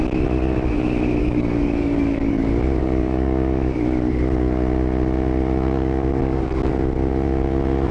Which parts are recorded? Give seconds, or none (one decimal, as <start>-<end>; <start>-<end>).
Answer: 0.0-1.2; 2.4-2.8; 3.8-6.2; 6.7-7.9